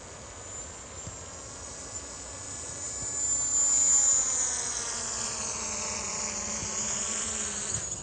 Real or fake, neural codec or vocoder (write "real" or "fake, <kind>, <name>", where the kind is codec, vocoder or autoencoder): real